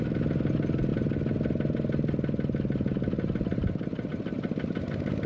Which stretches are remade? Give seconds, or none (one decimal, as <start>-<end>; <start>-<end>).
none